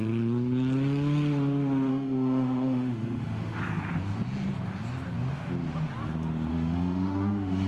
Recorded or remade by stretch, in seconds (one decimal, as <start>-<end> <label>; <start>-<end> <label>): 0.0-1.9 recorded; 1.9-3.6 remade; 3.6-6.5 recorded; 6.5-7.7 remade